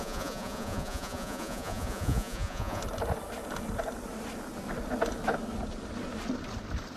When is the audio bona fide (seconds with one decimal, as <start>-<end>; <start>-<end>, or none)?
2.8-7.0